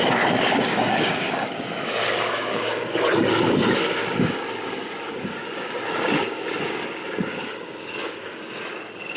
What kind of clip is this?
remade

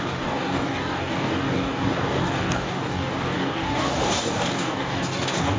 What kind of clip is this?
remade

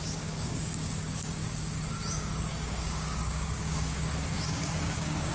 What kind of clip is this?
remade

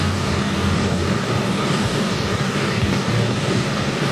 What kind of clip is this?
remade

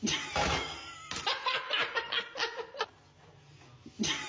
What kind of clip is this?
recorded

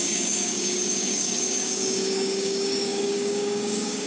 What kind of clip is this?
remade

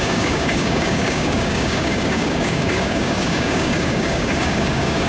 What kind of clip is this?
remade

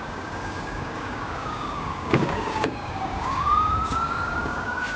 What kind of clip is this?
remade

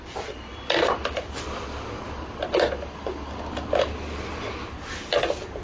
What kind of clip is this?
recorded